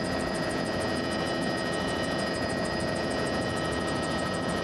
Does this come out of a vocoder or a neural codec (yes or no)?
yes